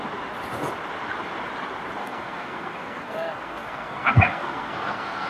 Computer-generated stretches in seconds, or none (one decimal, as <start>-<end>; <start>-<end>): 2.0-5.3